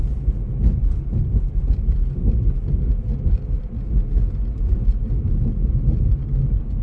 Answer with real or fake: real